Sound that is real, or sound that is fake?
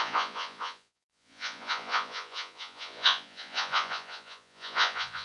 fake